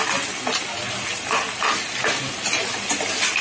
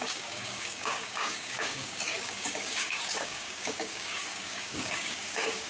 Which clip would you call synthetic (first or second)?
second